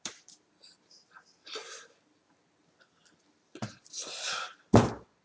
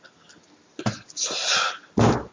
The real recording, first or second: second